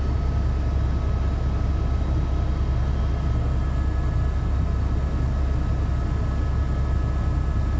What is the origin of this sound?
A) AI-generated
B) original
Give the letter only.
B